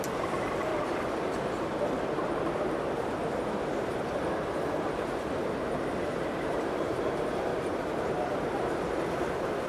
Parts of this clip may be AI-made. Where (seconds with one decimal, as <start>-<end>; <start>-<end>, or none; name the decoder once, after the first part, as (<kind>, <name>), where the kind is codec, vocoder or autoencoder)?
0.0-0.7 (vocoder, BigVGAN v2); 6.0-7.5; 9.1-9.7